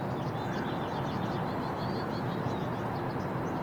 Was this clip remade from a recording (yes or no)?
no